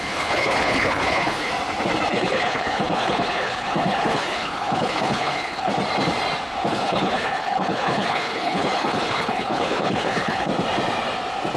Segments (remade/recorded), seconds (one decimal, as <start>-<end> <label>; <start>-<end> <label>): 0.0-1.5 remade; 1.5-2.1 recorded; 2.1-5.7 remade; 5.7-6.7 recorded; 6.7-10.5 remade; 10.5-11.6 recorded